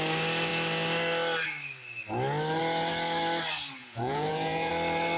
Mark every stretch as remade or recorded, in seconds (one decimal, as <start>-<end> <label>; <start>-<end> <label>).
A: 0.0-3.8 recorded; 3.8-4.7 remade; 4.7-5.2 recorded